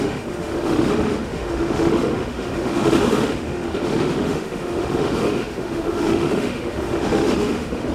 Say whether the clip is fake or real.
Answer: fake